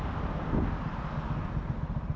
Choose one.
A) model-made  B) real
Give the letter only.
B